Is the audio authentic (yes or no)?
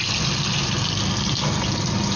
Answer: yes